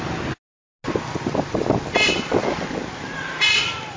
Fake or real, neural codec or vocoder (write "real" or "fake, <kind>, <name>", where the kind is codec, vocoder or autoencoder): real